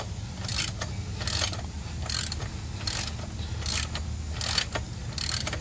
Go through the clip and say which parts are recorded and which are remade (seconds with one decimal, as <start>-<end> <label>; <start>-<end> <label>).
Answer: 0.0-5.6 recorded